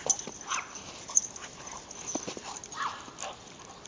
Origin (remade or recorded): recorded